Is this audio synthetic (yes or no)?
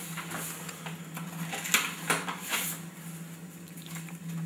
no